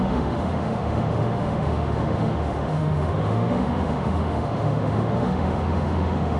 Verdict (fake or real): fake